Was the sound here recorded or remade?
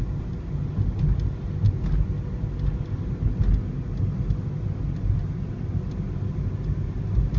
recorded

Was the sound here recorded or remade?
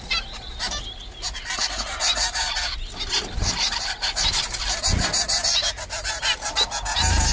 recorded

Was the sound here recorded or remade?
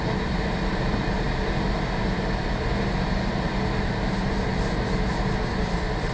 recorded